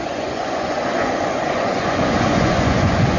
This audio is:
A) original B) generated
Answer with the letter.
B